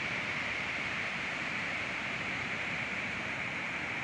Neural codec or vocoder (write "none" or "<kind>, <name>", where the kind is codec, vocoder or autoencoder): vocoder, BigVGAN v2